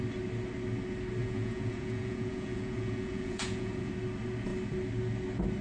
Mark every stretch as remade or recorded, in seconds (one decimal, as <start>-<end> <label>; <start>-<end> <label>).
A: 0.0-1.2 recorded; 1.2-3.9 remade; 3.9-5.6 recorded